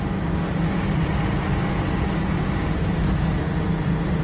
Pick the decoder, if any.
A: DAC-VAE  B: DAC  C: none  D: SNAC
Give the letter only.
C